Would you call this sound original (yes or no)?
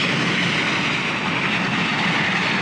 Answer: yes